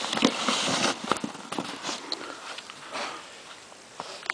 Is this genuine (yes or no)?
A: yes